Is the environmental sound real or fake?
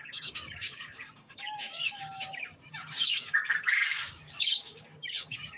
fake